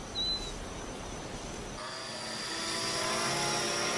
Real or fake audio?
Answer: real